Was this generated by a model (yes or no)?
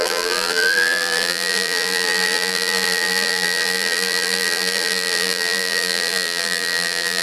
yes